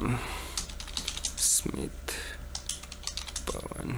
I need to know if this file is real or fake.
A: real